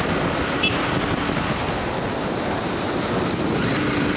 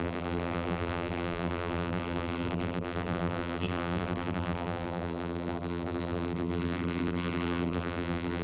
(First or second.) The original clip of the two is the first